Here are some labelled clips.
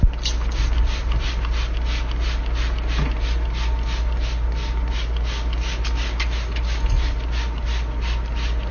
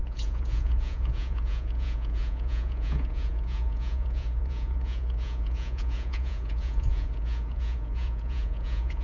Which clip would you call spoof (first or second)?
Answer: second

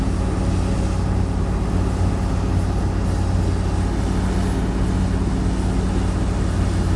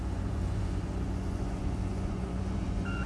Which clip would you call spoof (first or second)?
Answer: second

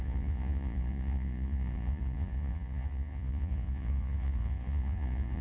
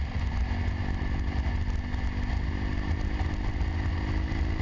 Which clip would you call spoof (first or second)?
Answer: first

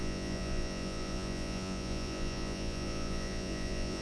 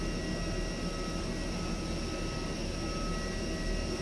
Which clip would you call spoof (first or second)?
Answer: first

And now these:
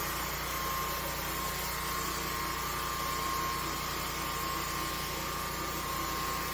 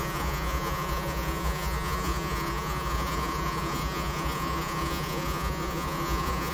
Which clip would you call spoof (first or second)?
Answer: second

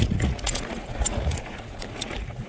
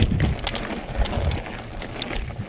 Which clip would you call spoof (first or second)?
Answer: first